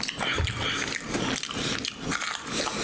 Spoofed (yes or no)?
no